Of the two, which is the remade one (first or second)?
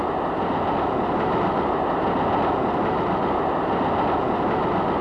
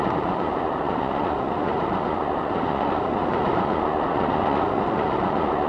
second